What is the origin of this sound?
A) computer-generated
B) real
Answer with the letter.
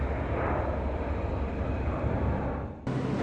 B